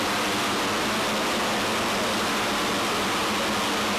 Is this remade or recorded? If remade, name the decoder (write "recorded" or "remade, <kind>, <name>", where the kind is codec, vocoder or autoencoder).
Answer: recorded